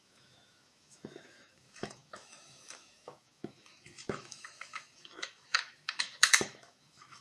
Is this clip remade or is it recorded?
remade